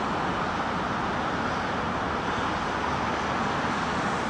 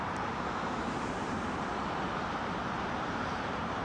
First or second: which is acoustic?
first